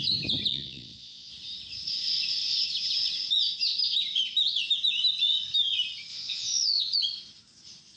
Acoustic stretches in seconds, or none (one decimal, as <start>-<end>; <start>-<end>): 0.0-0.5; 1.3-6.1; 6.8-8.0

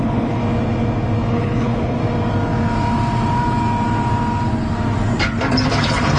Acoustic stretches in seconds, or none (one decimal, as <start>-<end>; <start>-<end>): 0.4-1.3; 2.0-5.7

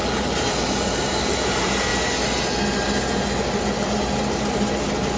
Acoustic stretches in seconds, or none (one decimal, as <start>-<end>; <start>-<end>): 1.9-5.2

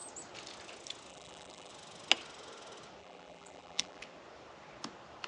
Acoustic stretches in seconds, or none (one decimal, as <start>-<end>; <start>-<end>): 0.0-1.1; 1.7-3.0; 4.0-5.3

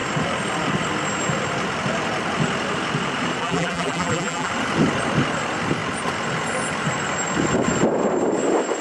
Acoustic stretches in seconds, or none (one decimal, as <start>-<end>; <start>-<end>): 0.0-3.4; 4.5-8.8

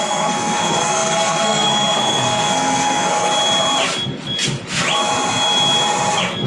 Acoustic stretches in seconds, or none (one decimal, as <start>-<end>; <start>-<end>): 3.3-6.5

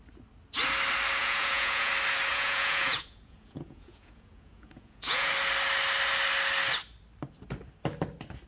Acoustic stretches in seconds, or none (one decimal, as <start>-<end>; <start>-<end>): 0.0-1.2; 1.9-2.3; 5.3-8.5